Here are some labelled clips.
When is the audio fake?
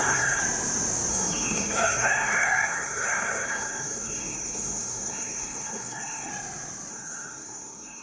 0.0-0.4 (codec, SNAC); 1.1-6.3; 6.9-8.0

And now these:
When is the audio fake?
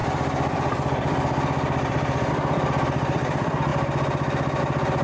0.0-3.7 (vocoder, BigVGAN v2); 4.6-5.0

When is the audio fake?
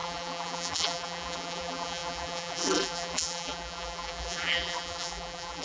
0.0-5.6 (vocoder, BigVGAN v2)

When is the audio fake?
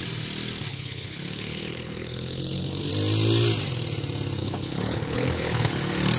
0.7-2.9 (codec, HILCodec); 4.4-5.8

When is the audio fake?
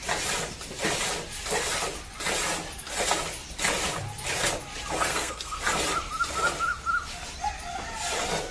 5.1-5.6 (codec, SNAC)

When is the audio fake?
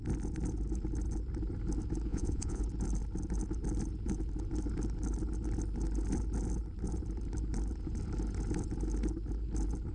2.1-2.6 (vocoder, Vocos)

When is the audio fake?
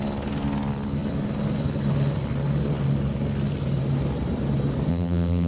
4.9-5.5 (vocoder, BigVGAN v2)